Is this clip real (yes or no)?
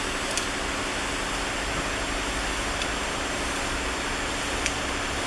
yes